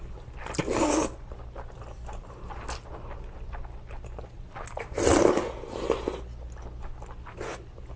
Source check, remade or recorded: recorded